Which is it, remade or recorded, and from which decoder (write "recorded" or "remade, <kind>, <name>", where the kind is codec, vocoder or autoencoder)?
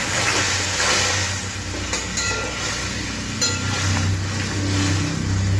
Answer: recorded